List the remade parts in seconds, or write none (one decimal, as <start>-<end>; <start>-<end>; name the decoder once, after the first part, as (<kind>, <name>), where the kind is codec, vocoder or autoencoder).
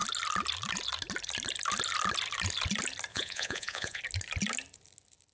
3.1-4.0 (vocoder, Vocos)